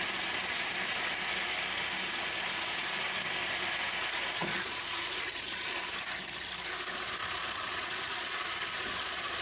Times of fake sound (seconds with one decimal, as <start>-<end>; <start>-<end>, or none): 4.4-5.8; 7.2-9.4